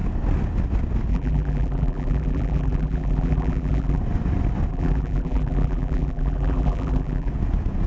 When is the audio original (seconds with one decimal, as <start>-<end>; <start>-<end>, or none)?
0.0-1.1; 4.0-4.7; 7.3-7.9